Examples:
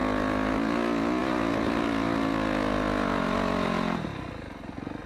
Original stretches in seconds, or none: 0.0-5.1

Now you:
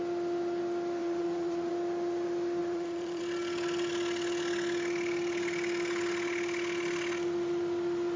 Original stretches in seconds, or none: 0.0-1.0; 1.7-2.6; 3.2-8.2

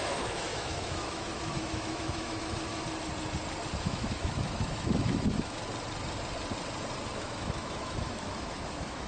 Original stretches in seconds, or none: 2.8-3.8; 5.6-7.2